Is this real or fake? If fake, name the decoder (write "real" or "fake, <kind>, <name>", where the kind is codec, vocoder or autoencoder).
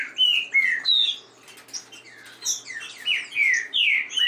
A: real